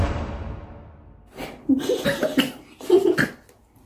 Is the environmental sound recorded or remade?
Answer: remade